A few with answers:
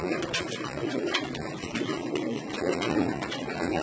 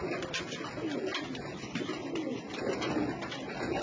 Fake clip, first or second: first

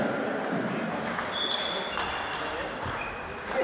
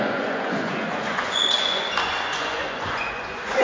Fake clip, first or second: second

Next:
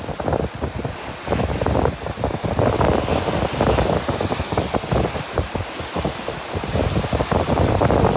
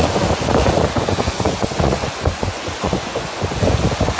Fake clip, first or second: second